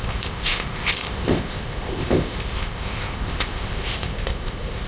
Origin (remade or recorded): remade